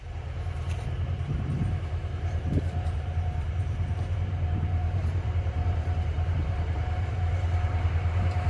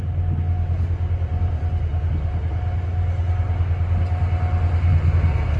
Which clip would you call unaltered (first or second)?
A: second